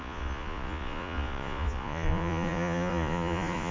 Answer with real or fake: fake